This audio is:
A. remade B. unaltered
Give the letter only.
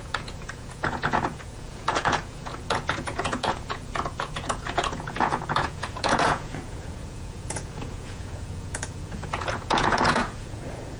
A